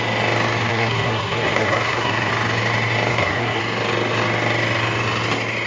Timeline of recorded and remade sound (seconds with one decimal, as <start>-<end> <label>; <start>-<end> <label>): 0.0-0.7 recorded; 0.7-2.3 remade; 2.3-3.1 recorded; 3.1-3.6 remade; 3.6-5.7 recorded